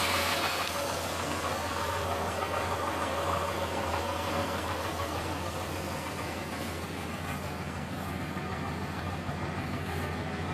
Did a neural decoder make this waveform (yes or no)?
yes